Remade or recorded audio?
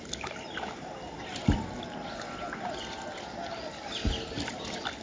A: recorded